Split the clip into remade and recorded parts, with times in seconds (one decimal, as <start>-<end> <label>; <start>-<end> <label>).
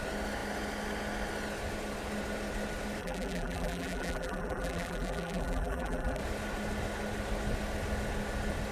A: 0.0-3.0 recorded; 3.0-6.2 remade; 6.2-8.7 recorded